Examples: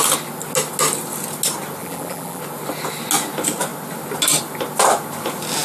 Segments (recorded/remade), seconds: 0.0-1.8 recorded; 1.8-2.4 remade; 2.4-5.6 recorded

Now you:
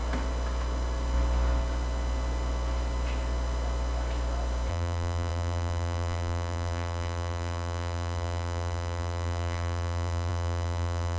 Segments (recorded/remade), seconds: 0.0-4.7 recorded; 4.7-11.2 remade